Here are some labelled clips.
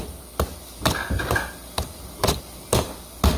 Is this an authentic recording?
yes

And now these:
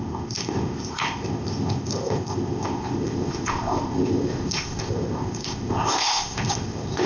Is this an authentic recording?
no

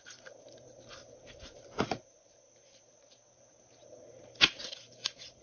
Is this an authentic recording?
no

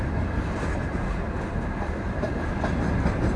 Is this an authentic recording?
yes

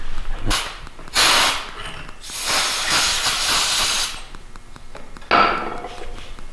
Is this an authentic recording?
yes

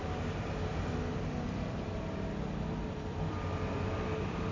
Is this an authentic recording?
no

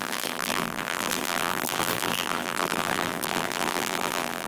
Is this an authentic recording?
no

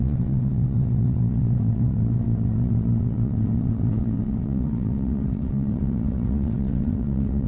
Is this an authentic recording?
no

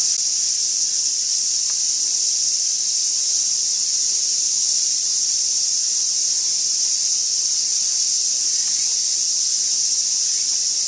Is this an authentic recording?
yes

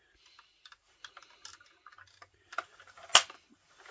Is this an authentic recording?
yes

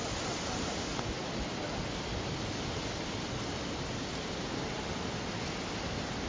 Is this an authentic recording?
yes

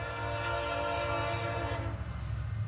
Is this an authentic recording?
yes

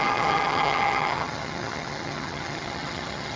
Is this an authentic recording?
no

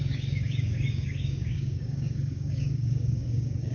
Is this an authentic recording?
no